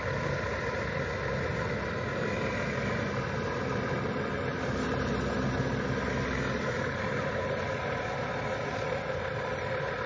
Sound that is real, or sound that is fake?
real